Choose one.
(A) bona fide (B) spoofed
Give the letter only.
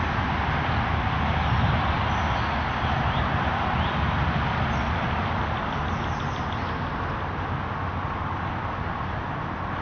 A